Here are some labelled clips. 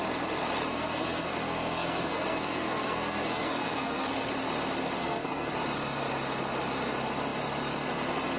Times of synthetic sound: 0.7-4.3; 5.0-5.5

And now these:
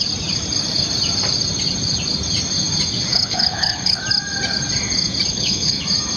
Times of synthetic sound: 3.1-4.0; 5.3-5.8

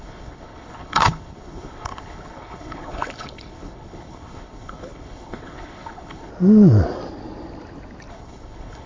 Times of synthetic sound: 0.0-6.3; 8.1-8.9

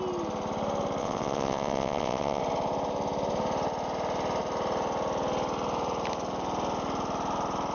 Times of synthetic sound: 1.0-2.4